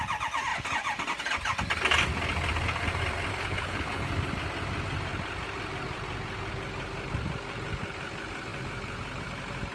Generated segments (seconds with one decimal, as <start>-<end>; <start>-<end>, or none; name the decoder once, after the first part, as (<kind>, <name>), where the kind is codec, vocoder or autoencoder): 3.3-4.1 (codec, HILCodec)